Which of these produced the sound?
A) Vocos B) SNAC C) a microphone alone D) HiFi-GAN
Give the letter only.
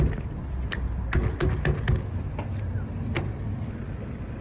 C